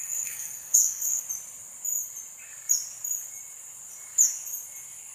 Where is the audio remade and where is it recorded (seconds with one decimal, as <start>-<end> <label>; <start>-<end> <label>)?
0.0-1.2 remade; 1.2-5.1 recorded